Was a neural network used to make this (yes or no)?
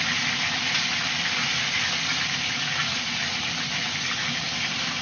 no